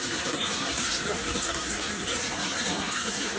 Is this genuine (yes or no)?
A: no